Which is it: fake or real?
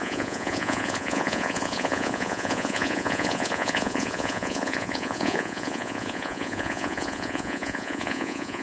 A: fake